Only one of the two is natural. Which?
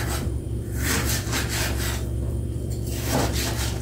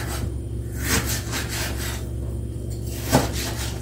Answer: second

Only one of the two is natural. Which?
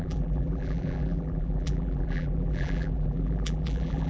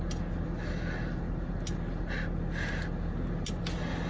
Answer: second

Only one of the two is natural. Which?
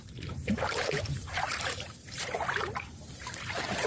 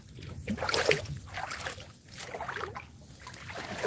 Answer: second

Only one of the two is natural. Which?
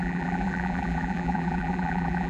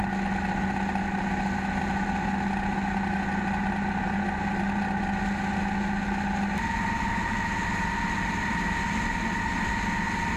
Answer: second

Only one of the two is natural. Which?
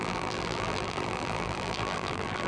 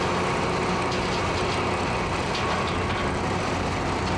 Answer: second